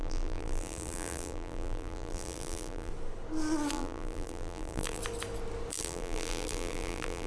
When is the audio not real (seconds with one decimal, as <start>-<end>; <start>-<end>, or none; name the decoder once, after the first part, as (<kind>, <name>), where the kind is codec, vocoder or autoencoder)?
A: 0.0-2.9 (vocoder, BigVGAN v2); 3.7-5.0; 5.7-7.3